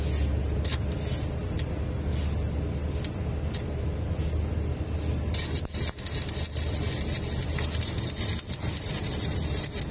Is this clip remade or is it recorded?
recorded